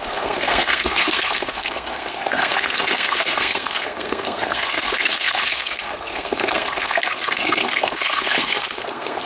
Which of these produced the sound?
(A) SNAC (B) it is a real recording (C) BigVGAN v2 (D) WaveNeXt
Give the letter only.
A